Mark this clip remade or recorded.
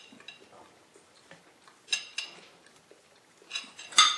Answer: recorded